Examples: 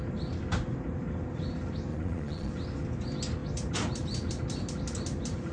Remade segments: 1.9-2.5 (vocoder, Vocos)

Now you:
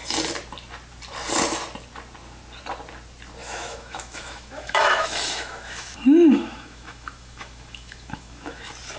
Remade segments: 3.4-8.6 (autoencoder, DAC-VAE)

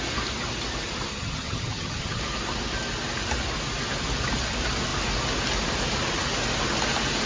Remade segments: 1.1-2.2 (vocoder, HiFi-GAN)

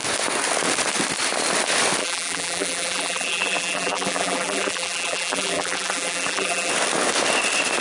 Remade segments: 2.0-6.7 (vocoder, BigVGAN v2)

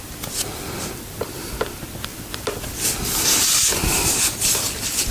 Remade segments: 2.1-5.1 (vocoder, BigVGAN v2)